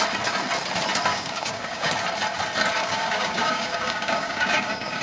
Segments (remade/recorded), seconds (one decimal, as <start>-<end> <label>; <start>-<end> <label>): 0.0-1.1 recorded; 1.1-1.9 remade; 1.9-2.8 recorded; 2.8-5.0 remade